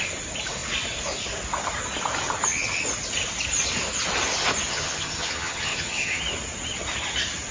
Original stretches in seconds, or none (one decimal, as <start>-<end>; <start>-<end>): 0.0-4.7; 6.2-7.5